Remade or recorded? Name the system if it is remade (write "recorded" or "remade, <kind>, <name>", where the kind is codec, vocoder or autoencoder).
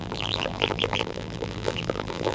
remade, vocoder, BigVGAN v2